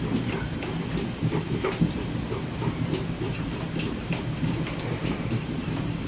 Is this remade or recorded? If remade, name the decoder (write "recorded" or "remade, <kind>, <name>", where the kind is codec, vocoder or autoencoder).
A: remade, vocoder, BigVGAN v2